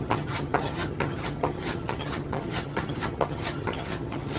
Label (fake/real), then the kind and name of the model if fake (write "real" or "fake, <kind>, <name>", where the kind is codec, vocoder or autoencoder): fake, vocoder, HiFi-GAN